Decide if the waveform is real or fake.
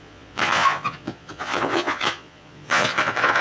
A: fake